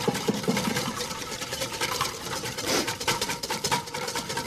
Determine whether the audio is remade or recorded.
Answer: remade